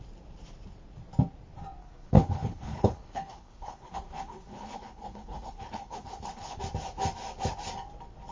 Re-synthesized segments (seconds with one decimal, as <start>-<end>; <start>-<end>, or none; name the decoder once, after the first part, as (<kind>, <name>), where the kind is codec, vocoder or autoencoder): 1.8-6.6 (codec, HILCodec)